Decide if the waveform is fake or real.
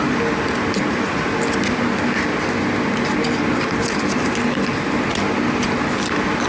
real